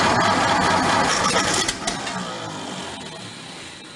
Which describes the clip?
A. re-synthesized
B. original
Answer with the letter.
B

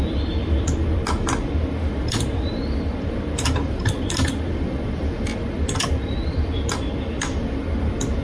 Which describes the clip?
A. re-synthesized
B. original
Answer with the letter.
A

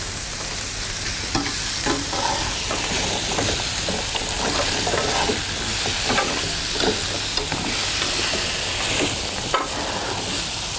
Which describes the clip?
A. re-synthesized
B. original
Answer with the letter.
B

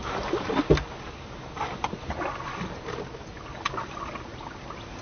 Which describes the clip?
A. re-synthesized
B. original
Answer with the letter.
B